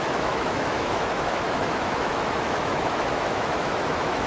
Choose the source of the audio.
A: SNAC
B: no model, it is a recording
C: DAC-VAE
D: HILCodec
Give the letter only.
C